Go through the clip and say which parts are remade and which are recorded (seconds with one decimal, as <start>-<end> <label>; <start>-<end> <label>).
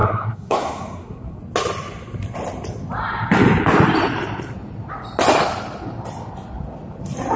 0.0-1.4 remade; 1.4-7.4 recorded